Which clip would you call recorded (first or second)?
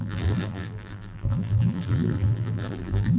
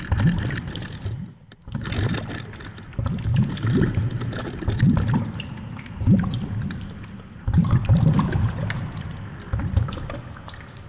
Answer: second